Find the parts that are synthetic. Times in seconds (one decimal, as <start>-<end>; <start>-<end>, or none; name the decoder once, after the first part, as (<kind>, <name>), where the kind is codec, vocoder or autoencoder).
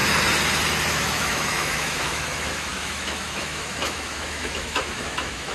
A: 0.9-5.5 (autoencoder, DAC-VAE)